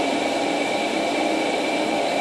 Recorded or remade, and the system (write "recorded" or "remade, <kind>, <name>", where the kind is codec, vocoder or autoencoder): recorded